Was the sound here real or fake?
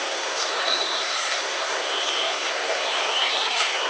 fake